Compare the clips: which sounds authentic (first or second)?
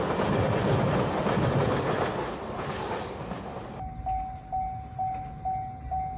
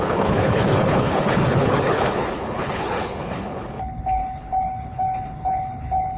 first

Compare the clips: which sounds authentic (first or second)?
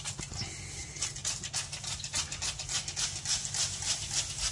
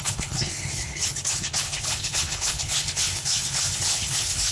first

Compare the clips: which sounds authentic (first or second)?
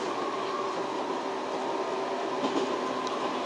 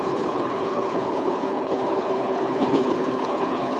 first